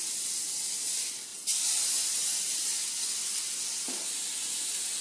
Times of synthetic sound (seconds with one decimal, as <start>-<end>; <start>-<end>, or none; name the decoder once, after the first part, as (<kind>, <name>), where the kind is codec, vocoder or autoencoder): none